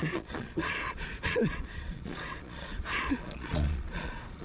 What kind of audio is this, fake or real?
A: fake